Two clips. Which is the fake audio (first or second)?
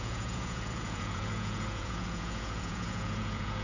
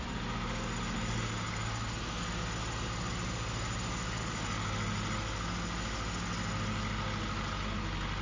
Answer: first